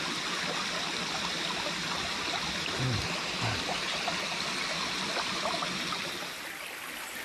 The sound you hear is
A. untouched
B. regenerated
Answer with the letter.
A